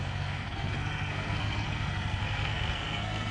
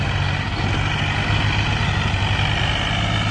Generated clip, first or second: first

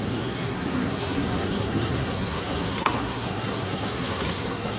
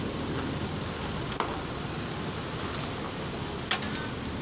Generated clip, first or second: first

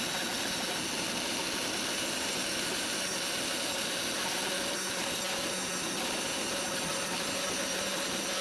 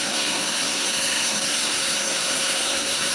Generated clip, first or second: second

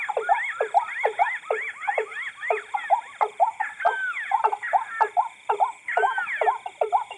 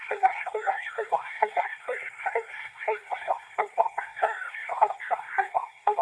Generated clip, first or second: second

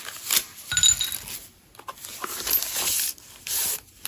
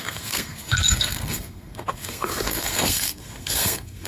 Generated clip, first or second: second